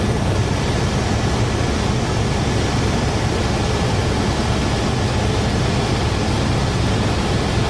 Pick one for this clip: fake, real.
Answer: real